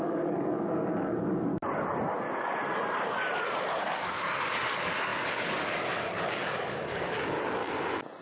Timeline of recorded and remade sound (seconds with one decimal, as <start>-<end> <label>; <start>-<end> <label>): 0.0-1.5 remade; 1.5-3.7 recorded; 3.7-7.6 remade; 7.6-8.2 recorded